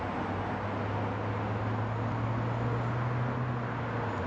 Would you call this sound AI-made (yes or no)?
no